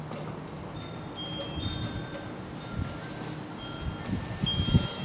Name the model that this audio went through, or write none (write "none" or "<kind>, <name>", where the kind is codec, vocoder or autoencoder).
none